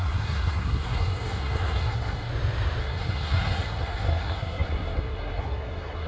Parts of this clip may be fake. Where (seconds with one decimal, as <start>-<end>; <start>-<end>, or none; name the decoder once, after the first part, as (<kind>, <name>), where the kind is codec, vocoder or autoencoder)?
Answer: 0.0-2.3 (codec, SNAC); 2.8-6.1